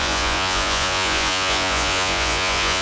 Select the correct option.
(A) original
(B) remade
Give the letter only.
B